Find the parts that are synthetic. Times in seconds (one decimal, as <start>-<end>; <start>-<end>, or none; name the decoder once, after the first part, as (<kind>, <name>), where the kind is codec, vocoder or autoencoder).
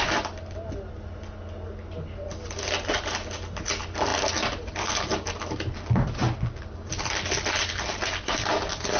none